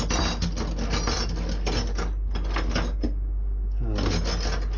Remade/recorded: recorded